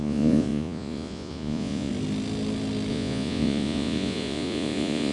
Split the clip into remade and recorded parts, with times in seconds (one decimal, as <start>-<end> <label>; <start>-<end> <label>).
0.0-1.9 remade; 1.9-2.9 recorded; 2.9-5.1 remade